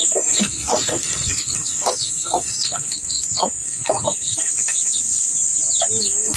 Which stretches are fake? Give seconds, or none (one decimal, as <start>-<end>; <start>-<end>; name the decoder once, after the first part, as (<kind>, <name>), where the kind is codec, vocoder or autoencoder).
0.0-5.3 (codec, SNAC); 6.0-6.4